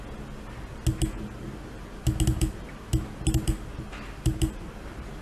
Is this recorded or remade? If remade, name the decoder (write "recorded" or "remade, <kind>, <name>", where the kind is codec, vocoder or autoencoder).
recorded